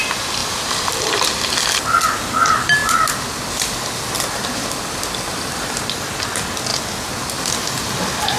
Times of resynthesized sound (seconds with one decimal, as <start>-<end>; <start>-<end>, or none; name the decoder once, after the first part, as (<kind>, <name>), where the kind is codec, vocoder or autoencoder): 0.4-1.2 (vocoder, BigVGAN v2)